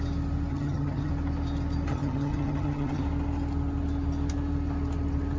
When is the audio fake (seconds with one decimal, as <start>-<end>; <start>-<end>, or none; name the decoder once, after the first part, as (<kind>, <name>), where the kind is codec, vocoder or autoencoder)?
0.5-1.1 (vocoder, HiFi-GAN); 1.9-3.0